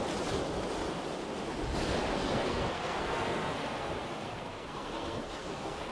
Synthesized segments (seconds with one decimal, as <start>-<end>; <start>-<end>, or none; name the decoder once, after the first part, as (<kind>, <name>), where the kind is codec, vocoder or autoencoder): 2.1-5.9 (codec, SNAC)